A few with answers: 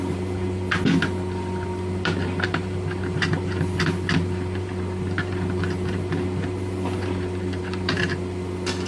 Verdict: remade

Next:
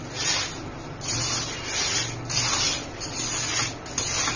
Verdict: recorded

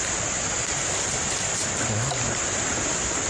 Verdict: remade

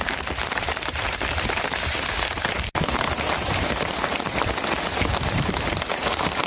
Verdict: remade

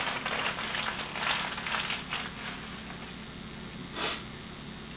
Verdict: recorded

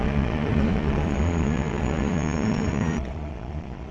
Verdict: remade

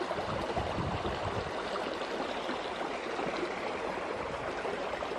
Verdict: recorded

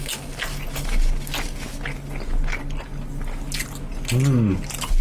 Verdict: recorded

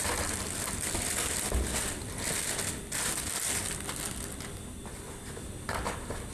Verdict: recorded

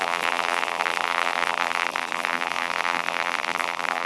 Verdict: remade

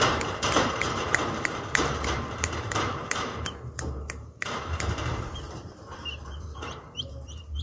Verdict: remade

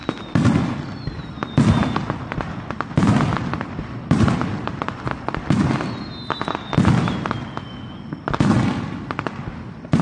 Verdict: recorded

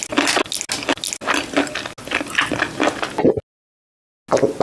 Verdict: recorded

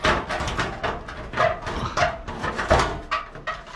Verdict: recorded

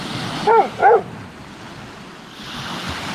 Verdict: recorded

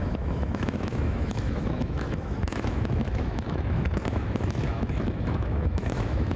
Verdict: remade